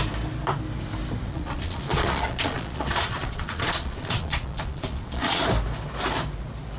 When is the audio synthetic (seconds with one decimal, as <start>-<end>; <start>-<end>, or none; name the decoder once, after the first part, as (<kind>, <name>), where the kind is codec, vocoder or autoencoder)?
1.3-5.4 (vocoder, Vocos)